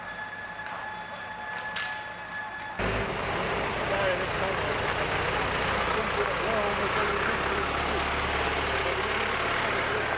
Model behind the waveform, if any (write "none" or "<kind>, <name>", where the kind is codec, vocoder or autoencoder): none